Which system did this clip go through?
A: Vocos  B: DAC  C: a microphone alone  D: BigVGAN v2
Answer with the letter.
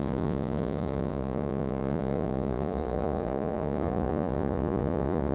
A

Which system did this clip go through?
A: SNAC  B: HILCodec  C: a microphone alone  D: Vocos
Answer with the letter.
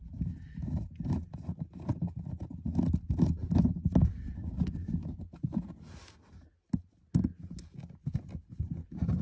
C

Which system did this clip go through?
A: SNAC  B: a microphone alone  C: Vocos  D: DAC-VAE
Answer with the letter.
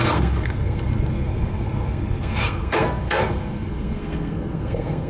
A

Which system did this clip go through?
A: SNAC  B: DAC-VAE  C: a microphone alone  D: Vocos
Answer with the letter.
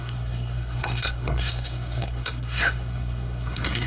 A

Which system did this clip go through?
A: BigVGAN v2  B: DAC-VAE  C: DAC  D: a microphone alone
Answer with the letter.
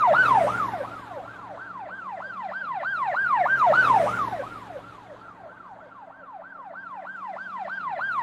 D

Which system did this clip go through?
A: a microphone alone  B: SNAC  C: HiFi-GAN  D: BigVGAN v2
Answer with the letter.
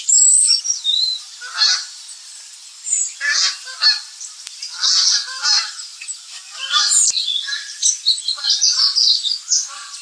A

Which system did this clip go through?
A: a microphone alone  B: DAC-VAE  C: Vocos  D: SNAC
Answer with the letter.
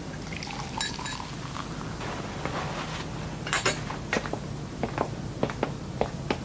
A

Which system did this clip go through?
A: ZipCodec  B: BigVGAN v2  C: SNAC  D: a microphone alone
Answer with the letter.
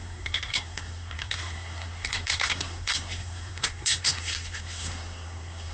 C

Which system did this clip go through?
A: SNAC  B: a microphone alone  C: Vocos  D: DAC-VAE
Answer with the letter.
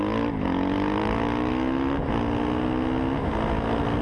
B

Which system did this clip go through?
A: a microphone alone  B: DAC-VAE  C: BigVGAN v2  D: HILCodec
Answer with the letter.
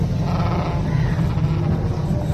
A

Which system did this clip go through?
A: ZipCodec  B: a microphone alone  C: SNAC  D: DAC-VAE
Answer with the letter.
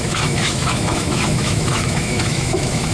D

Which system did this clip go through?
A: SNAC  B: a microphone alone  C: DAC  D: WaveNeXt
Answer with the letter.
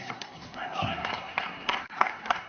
A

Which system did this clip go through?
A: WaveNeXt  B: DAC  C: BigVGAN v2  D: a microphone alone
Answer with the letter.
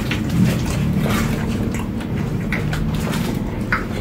C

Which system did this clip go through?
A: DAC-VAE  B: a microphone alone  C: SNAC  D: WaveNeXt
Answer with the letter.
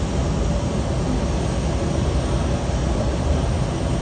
B